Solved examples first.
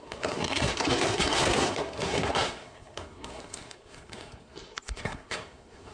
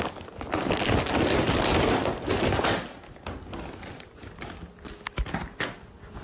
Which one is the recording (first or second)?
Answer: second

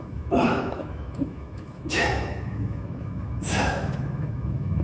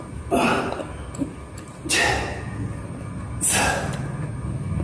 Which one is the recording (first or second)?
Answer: second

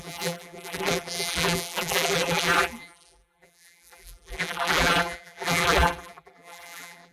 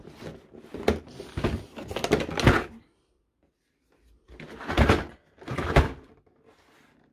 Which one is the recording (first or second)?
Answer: second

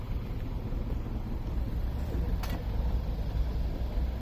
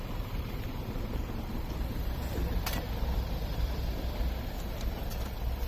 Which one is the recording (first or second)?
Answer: first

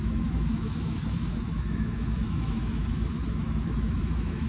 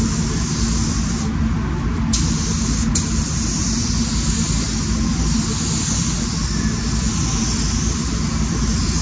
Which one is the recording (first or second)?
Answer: second